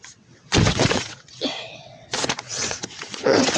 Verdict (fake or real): fake